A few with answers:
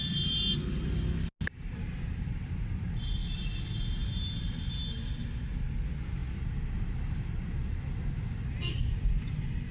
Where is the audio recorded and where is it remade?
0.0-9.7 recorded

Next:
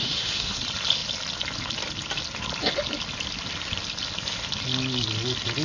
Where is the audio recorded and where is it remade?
0.0-0.6 remade; 0.6-5.6 recorded

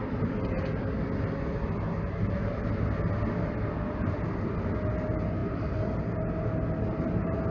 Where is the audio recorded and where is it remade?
0.0-7.5 recorded

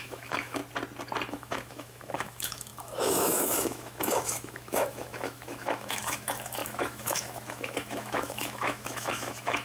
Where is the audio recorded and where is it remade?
0.0-0.6 remade; 0.6-1.3 recorded; 1.3-9.6 remade

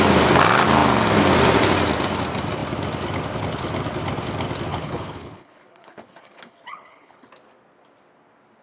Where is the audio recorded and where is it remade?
0.0-4.7 recorded; 4.7-7.3 remade; 7.3-8.6 recorded

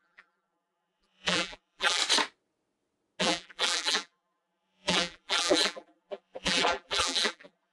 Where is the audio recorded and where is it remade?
0.0-2.0 remade; 2.0-3.2 recorded; 3.2-7.7 remade